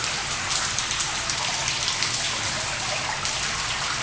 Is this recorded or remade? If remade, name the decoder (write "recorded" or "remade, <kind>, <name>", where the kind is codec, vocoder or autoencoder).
recorded